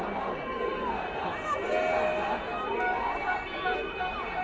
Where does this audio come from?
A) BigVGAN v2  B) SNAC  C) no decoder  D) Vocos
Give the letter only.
C